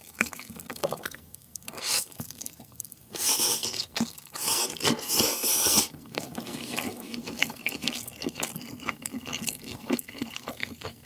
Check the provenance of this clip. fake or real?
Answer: fake